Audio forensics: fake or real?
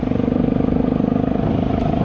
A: real